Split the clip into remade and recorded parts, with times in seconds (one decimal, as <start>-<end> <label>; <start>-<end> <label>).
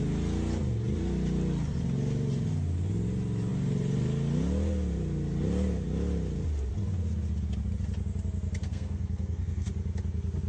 0.0-8.6 recorded; 8.6-9.7 remade; 9.7-10.5 recorded